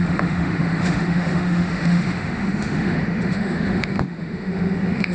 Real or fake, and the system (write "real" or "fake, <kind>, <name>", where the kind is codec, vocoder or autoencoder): fake, autoencoder, DAC-VAE